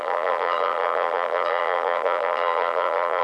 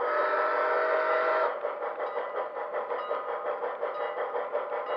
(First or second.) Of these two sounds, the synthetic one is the first